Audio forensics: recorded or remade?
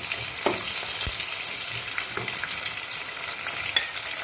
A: recorded